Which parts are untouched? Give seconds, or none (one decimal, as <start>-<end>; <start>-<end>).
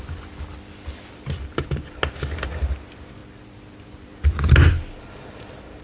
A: 0.0-5.8